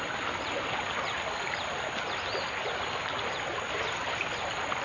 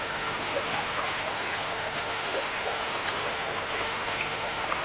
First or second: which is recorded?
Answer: first